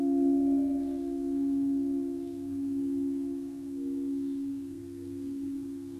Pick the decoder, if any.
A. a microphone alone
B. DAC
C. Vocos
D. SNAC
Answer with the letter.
D